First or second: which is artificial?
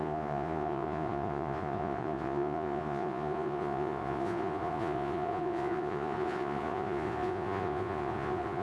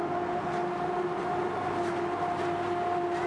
first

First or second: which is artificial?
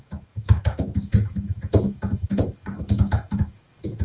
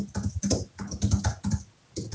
first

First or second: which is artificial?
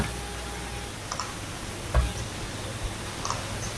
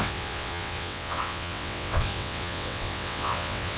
second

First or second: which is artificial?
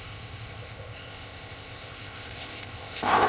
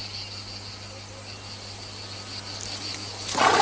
first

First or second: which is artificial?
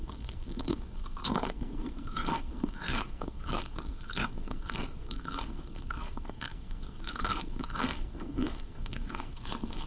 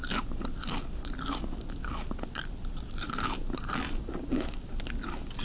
first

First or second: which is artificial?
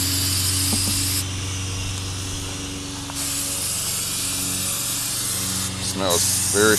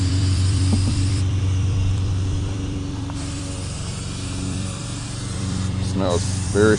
second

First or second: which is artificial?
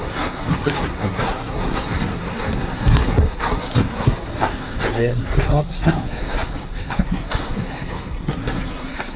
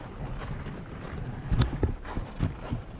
first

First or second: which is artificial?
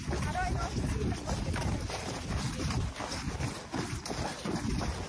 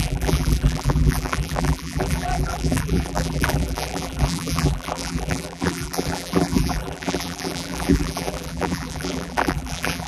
second